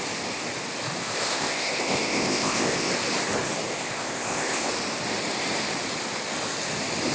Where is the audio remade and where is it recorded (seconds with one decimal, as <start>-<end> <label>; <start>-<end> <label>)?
0.0-1.0 recorded; 1.0-2.9 remade; 2.9-3.7 recorded; 3.7-4.7 remade; 4.7-7.1 recorded